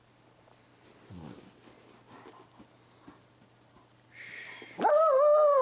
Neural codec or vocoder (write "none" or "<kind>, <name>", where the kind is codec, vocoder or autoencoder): none